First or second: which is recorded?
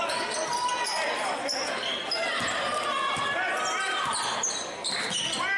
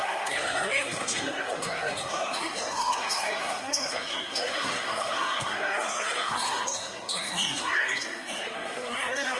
first